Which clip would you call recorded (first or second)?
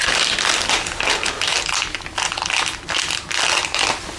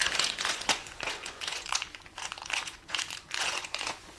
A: first